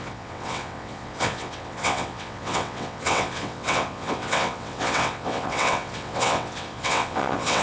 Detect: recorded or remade remade